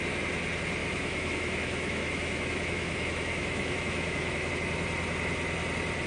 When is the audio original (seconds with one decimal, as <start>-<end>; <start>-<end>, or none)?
0.0-0.8; 4.5-6.1